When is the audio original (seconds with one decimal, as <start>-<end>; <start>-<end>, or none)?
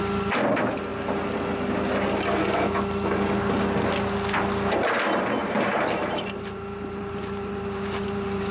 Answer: 0.0-5.4